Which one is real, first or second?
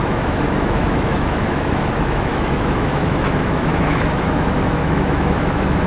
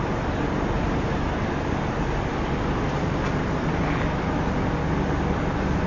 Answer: second